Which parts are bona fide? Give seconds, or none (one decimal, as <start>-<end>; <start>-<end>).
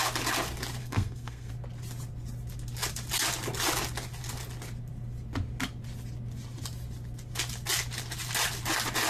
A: 0.0-0.8; 1.5-9.1